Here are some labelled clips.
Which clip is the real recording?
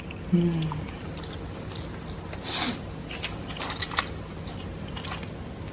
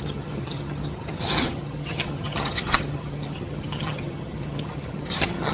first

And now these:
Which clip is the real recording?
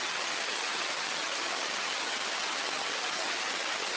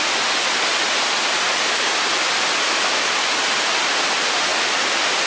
second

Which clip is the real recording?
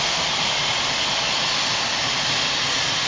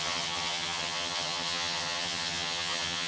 first